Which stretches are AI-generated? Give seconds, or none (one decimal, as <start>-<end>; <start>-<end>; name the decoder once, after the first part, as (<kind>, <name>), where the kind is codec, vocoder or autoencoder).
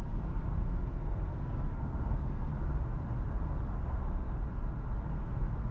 0.0-2.5 (codec, SNAC); 3.7-4.4; 5.1-5.7